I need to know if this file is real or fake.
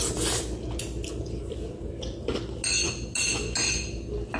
real